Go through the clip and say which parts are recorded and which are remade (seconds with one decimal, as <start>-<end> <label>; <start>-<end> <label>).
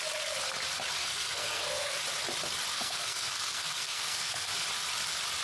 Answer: 0.0-1.0 recorded; 1.0-2.0 remade; 2.0-2.7 recorded; 2.7-4.5 remade; 4.5-5.4 recorded